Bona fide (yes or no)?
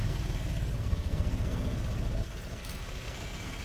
no